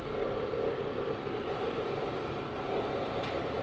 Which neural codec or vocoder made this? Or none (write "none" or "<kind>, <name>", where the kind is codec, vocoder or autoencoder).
none